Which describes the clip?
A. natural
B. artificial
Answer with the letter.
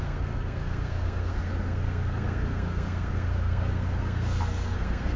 B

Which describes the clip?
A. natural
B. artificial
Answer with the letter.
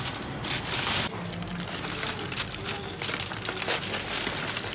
A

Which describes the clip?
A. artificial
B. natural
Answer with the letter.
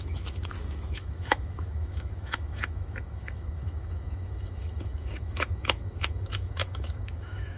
A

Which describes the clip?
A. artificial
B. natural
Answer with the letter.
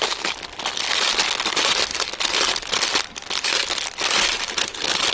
B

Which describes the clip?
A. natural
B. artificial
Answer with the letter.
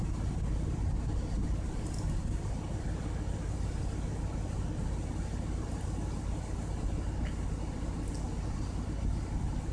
A